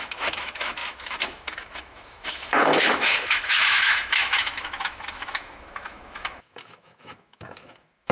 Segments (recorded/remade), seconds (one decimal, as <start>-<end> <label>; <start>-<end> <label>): 0.0-8.1 remade